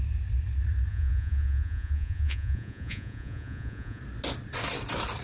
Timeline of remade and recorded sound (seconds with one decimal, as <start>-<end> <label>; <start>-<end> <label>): 0.0-0.9 recorded; 0.9-4.0 remade; 4.0-5.2 recorded